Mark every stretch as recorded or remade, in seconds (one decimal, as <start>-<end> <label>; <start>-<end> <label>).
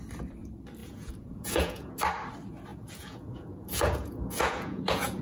0.0-0.8 recorded; 0.8-1.9 remade; 1.9-2.7 recorded; 2.7-5.2 remade